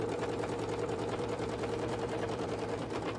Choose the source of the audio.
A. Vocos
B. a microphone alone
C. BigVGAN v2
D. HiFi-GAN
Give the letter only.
C